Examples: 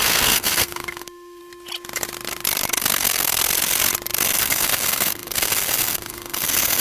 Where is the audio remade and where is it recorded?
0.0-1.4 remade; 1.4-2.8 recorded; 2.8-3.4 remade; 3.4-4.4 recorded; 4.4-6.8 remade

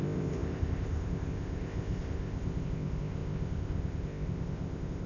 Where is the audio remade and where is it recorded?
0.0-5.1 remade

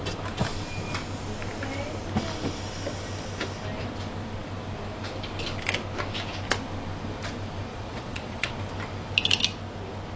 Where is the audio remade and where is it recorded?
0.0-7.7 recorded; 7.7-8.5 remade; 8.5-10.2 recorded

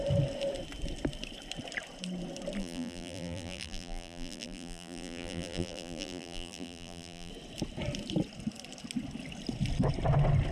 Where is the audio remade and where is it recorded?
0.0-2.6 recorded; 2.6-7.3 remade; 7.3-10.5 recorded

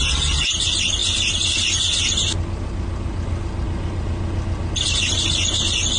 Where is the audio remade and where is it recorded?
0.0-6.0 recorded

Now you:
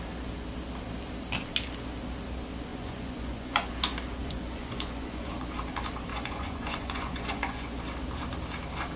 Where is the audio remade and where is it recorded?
0.0-2.7 recorded; 2.7-3.7 remade; 3.7-4.2 recorded; 4.2-5.3 remade; 5.3-6.1 recorded; 6.1-7.8 remade; 7.8-9.0 recorded